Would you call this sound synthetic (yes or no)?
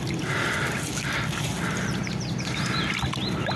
no